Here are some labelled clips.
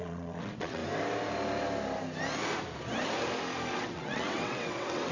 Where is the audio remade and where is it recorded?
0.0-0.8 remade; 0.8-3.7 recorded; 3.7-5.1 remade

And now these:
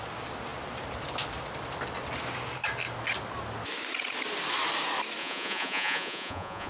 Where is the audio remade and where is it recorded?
0.0-5.2 recorded; 5.2-6.7 remade

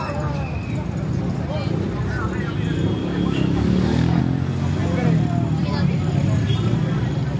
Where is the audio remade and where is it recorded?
0.0-3.0 recorded; 3.0-4.2 remade; 4.2-7.4 recorded

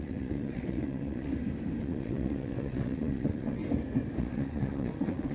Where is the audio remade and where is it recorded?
0.0-1.3 remade; 1.3-1.8 recorded; 1.8-3.6 remade; 3.6-4.2 recorded; 4.2-5.3 remade

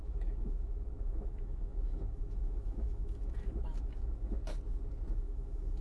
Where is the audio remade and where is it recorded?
0.0-4.4 remade; 4.4-5.1 recorded; 5.1-5.8 remade

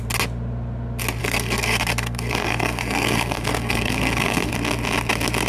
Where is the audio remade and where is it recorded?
0.0-1.2 recorded; 1.2-4.5 remade; 4.5-5.5 recorded

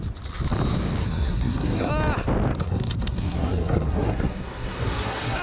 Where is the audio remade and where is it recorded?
0.0-1.0 recorded; 1.0-1.9 remade; 1.9-2.6 recorded; 2.6-5.4 remade